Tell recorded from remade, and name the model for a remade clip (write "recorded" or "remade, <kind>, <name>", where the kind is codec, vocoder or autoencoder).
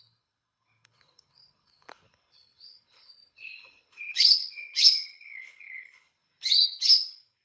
remade, codec, HILCodec